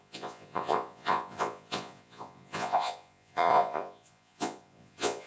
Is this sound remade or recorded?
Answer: remade